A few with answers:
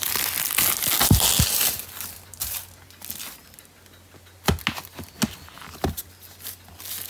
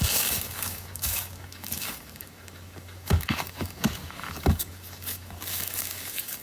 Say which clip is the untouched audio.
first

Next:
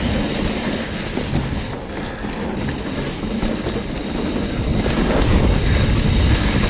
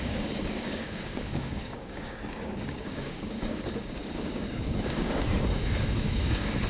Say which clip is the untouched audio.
first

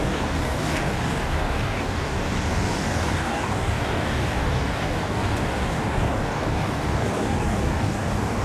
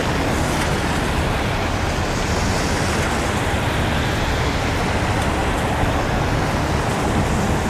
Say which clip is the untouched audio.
second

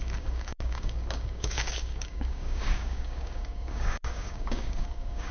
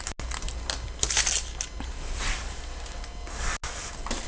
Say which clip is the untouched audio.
second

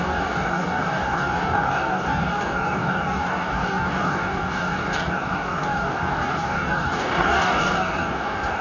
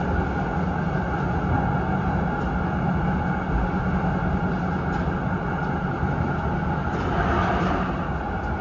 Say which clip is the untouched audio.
second